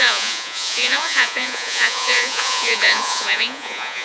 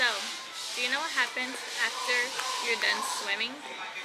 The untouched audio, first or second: second